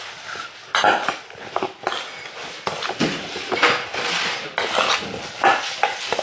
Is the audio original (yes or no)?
yes